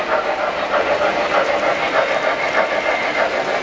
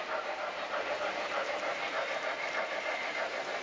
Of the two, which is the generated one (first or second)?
second